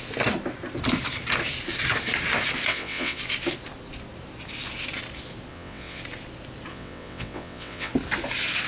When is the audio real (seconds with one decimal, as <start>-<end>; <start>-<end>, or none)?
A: 0.0-2.7; 3.2-5.5; 6.0-6.7; 7.9-8.7